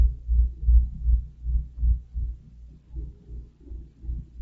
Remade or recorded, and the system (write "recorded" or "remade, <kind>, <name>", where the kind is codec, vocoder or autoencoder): recorded